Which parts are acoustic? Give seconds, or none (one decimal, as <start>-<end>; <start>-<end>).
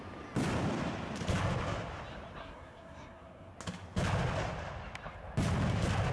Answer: 0.0-2.4; 3.5-6.1